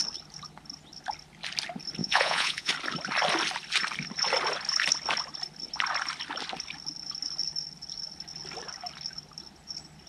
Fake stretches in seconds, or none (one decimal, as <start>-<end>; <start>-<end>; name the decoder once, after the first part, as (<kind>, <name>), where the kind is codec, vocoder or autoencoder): 2.0-2.7 (vocoder, Vocos)